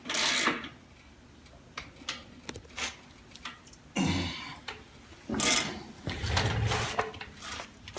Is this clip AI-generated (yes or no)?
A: no